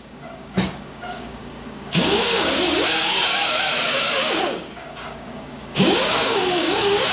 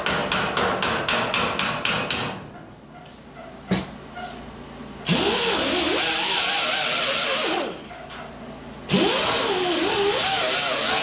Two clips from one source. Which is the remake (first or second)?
first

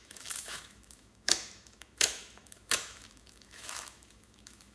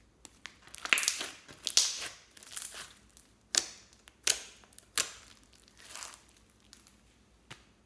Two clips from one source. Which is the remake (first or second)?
first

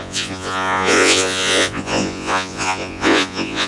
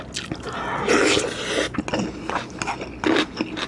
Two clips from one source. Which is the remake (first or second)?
first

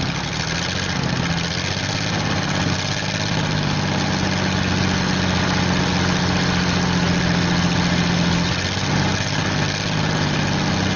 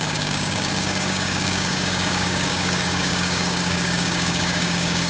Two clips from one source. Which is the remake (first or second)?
second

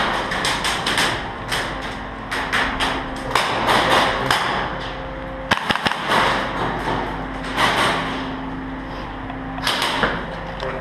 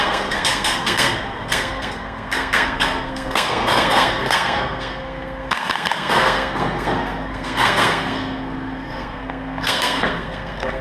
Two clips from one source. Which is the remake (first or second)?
second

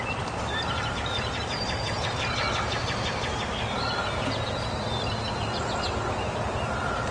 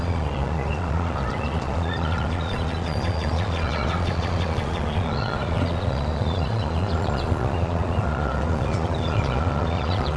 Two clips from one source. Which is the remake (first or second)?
second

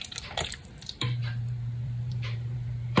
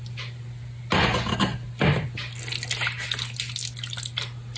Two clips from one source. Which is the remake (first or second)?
first